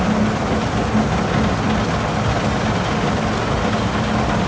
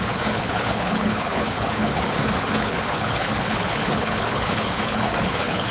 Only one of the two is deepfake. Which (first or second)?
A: second